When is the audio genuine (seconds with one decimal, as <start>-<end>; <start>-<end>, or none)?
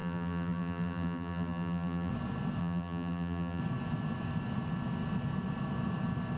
2.1-2.6; 3.6-6.4